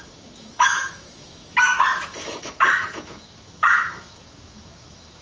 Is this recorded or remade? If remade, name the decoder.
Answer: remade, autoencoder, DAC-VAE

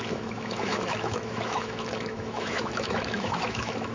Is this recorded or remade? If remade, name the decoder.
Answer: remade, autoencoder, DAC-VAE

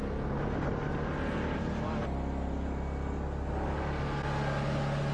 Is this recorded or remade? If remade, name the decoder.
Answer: recorded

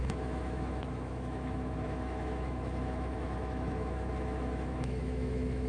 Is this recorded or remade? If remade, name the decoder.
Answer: remade, autoencoder, DAC-VAE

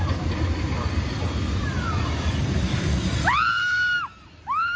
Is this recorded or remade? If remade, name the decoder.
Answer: recorded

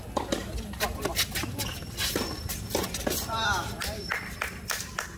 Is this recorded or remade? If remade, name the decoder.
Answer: recorded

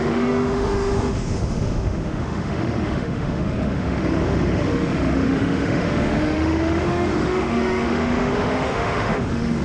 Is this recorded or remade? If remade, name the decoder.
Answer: remade, autoencoder, DAC-VAE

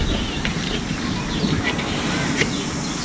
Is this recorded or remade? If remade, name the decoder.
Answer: recorded